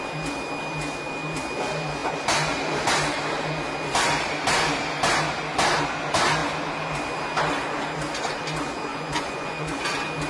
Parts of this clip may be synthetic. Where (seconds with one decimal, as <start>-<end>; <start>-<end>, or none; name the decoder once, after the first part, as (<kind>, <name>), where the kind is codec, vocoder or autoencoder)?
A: 8.9-9.8 (vocoder, Vocos)